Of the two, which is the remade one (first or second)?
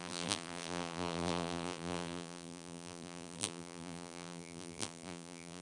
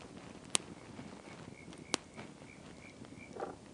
first